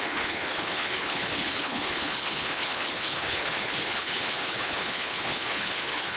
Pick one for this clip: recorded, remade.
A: remade